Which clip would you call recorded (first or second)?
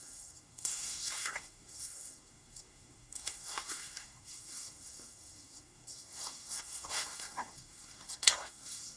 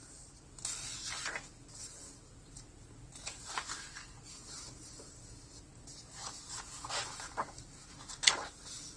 second